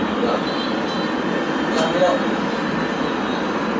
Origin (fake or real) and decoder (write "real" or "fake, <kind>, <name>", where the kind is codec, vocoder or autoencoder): real